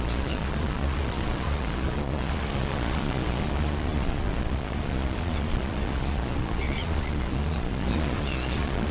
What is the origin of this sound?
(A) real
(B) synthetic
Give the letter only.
B